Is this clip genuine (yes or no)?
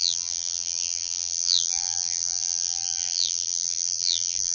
no